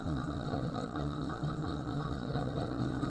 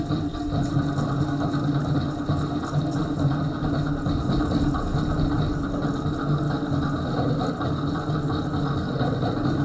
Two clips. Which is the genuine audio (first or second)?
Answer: second